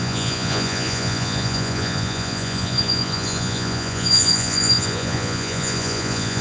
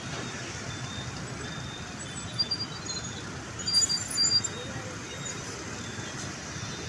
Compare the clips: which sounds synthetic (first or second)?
first